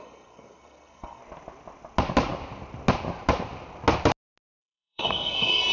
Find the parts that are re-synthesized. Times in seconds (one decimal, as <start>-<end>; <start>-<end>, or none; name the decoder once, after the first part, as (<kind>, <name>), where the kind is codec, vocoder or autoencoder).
0.0-1.2 (codec, SNAC); 4.6-5.7